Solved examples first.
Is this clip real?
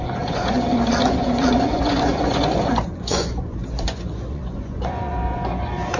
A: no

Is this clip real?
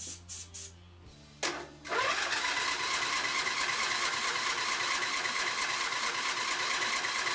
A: yes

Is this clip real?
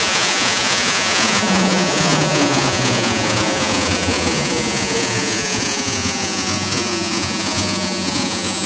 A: no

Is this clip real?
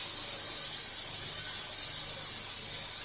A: yes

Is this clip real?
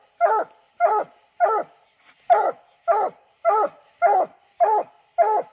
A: yes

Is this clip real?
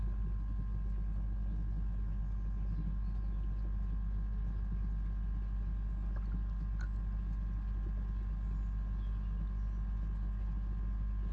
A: yes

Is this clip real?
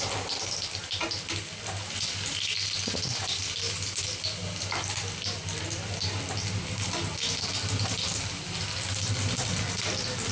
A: yes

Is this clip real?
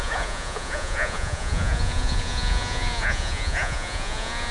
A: no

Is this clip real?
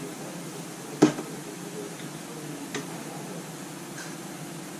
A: yes